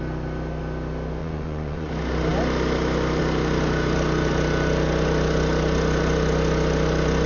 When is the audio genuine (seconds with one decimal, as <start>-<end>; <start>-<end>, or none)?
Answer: 0.0-1.2; 1.9-7.3